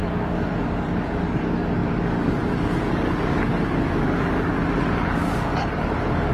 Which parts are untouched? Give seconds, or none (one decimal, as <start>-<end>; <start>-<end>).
4.6-5.1